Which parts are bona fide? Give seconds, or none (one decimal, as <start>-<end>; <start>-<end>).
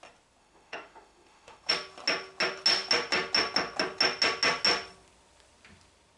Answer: 0.0-0.4; 1.7-6.2